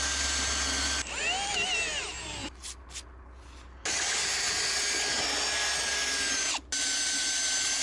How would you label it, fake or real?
real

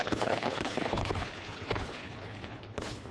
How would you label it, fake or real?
fake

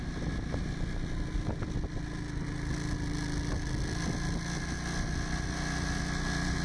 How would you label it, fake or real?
real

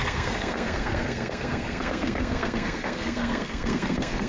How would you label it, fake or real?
fake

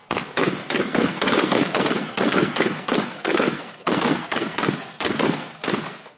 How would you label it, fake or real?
fake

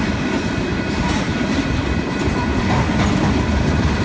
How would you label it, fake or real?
real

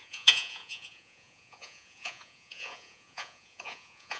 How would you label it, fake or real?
fake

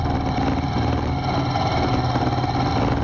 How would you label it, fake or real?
real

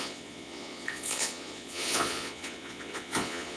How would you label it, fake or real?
fake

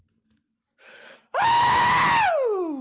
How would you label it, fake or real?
real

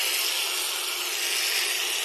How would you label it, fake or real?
real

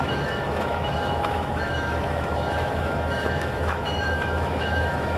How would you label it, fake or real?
fake